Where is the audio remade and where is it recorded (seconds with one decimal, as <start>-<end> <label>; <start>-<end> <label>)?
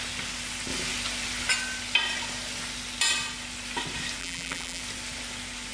0.0-4.2 recorded; 4.2-4.8 remade; 4.8-5.7 recorded